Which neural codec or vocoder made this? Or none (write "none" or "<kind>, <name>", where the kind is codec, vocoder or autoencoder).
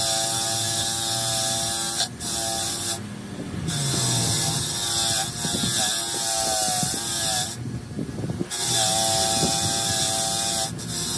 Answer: none